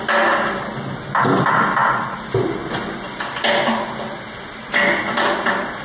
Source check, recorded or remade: recorded